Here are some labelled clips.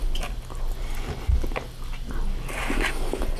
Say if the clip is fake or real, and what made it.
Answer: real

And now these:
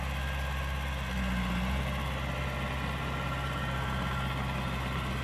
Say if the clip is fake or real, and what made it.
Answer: real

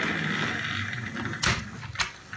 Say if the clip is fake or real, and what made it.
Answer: real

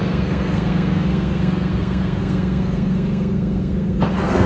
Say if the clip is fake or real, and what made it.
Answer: fake, codec, SNAC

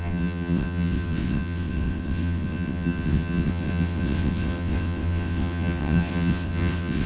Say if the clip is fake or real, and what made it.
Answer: fake, vocoder, WaveNeXt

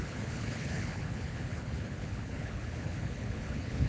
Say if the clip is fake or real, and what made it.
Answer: fake, codec, HILCodec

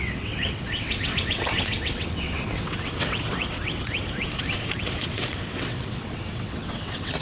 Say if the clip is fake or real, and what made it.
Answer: fake, vocoder, WaveNeXt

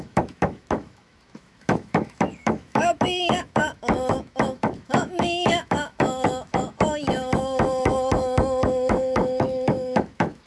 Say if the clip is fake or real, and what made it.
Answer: fake, autoencoder, DAC-VAE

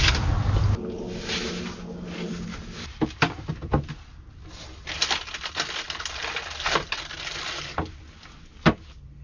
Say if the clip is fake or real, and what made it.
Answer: real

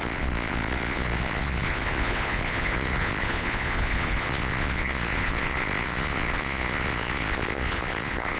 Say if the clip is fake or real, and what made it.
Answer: fake, vocoder, Vocos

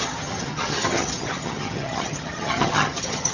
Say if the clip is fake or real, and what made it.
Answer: fake, vocoder, HiFi-GAN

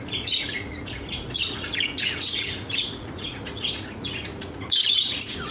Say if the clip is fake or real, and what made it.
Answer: fake, vocoder, Vocos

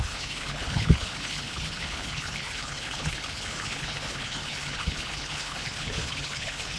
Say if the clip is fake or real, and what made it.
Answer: fake, codec, HILCodec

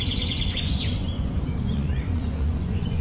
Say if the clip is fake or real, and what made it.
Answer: fake, vocoder, Vocos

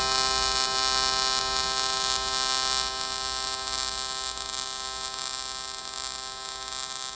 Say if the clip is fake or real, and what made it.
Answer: real